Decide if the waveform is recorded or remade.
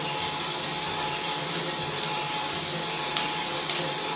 recorded